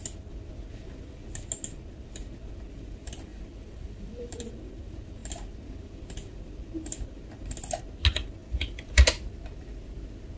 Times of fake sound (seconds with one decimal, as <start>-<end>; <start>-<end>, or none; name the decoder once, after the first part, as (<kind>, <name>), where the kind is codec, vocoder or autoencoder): 3.3-4.3 (vocoder, BigVGAN v2); 8.4-10.0